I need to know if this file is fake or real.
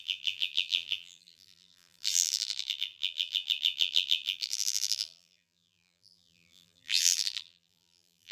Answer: fake